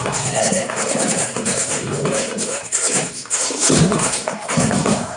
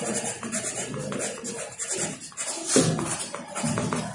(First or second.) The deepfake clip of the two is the first